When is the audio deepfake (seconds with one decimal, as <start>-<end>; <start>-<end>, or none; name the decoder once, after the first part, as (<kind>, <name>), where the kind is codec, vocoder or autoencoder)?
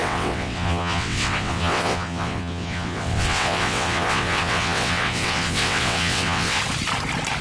0.0-6.6 (vocoder, WaveNeXt)